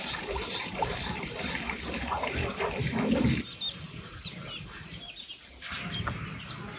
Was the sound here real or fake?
real